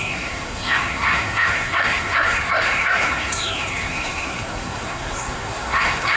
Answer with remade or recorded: remade